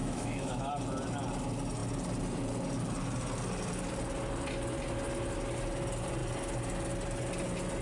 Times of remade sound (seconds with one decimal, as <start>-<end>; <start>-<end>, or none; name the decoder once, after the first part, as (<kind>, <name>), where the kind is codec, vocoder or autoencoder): 0.0-0.7 (autoencoder, DAC-VAE)